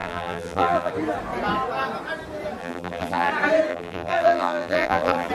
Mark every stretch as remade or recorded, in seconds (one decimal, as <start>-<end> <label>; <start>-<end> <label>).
0.0-0.9 remade; 0.9-2.6 recorded; 2.6-3.3 remade; 3.3-3.7 recorded; 3.7-5.3 remade